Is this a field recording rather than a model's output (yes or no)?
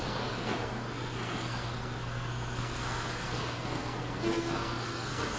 no